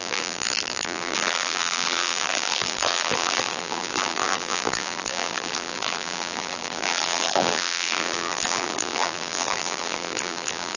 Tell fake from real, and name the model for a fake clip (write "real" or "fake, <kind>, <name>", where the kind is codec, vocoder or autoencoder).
fake, vocoder, BigVGAN v2